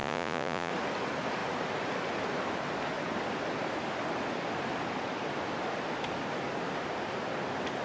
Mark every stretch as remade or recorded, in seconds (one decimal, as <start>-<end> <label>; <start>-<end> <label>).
0.0-0.7 remade; 0.7-7.8 recorded